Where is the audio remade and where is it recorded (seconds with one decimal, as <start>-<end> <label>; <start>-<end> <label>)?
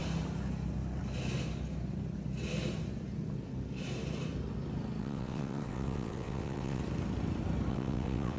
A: 0.0-5.0 recorded; 5.0-6.8 remade; 6.8-7.7 recorded; 7.7-8.4 remade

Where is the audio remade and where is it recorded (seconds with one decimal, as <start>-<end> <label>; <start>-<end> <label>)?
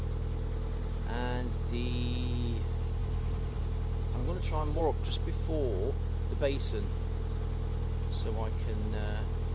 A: 0.0-3.0 recorded; 3.0-3.6 remade; 3.6-4.2 recorded; 4.2-4.8 remade; 4.8-9.5 recorded